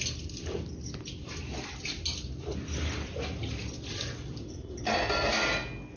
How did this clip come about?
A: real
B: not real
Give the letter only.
A